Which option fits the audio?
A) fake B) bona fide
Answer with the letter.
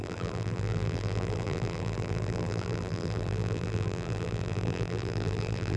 A